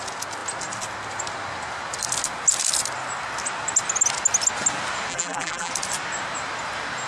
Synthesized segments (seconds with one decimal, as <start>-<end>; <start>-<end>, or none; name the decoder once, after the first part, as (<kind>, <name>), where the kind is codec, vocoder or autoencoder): 5.1-5.7 (vocoder, BigVGAN v2)